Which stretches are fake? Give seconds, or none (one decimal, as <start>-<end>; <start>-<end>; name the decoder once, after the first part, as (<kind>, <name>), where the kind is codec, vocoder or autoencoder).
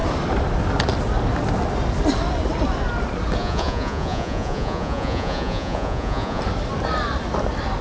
3.4-6.4 (vocoder, Vocos)